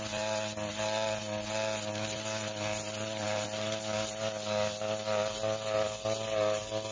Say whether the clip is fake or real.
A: real